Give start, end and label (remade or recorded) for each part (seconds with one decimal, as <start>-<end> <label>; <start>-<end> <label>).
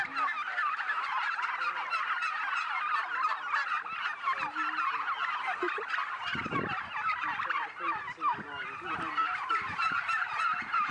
0.0-9.2 recorded; 9.2-10.4 remade; 10.4-10.9 recorded